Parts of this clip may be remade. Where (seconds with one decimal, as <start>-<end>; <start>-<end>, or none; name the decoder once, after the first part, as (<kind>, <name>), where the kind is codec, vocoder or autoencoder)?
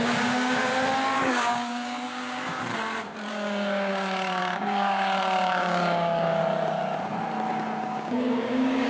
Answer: 0.0-0.7 (codec, DAC); 1.3-2.6; 3.3-6.4; 7.5-8.9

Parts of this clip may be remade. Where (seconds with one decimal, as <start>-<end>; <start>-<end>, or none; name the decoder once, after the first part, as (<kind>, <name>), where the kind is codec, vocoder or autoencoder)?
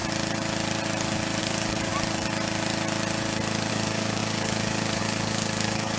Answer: 1.4-1.9 (codec, DAC); 3.7-6.0